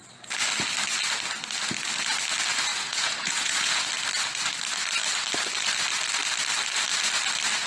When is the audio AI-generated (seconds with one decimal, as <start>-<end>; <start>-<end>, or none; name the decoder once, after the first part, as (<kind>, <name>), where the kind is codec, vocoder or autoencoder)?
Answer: 2.7-3.9 (vocoder, Vocos)